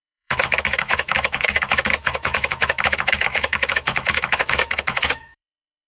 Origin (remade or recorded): remade